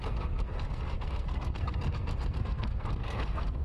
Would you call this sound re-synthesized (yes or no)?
yes